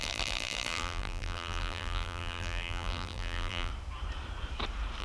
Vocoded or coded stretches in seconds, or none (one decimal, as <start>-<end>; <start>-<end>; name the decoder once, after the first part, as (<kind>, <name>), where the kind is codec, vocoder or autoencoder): 0.0-3.7 (vocoder, BigVGAN v2)